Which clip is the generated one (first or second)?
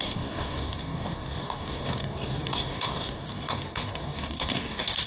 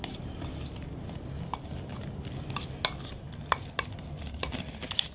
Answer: first